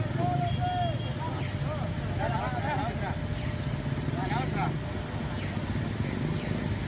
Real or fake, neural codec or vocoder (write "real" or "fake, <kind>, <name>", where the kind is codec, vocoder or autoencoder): real